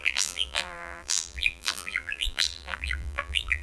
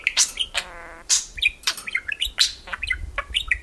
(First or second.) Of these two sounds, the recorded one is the second